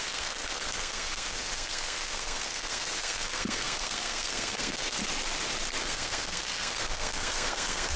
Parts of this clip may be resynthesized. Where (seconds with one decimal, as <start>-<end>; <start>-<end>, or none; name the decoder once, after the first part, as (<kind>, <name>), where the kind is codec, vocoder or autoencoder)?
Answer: 0.0-5.0 (codec, SNAC); 5.8-8.0